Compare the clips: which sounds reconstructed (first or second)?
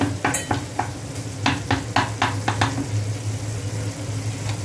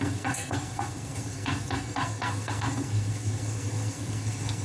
second